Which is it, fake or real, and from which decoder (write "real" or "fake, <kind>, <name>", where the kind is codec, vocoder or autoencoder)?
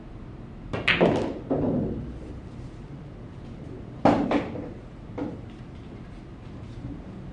real